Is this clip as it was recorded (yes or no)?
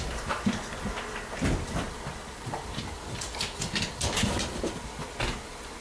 no